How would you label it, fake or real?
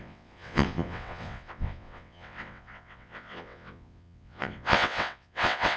fake